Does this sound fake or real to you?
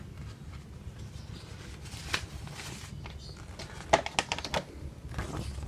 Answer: real